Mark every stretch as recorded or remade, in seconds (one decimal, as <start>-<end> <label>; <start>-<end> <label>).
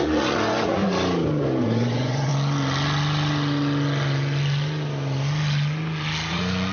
0.0-0.8 remade; 0.8-1.6 recorded; 1.6-2.3 remade; 2.3-6.3 recorded; 6.3-6.7 remade